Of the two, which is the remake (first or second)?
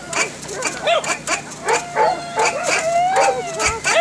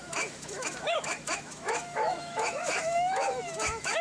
second